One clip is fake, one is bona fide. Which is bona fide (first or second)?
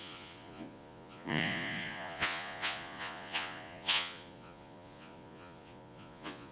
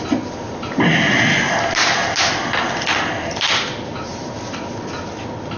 second